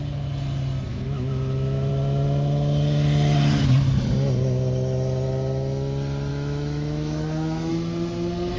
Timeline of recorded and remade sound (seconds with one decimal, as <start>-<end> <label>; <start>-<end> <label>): 0.0-0.9 recorded; 0.9-1.9 remade; 1.9-6.3 recorded; 6.3-7.7 remade; 7.7-8.6 recorded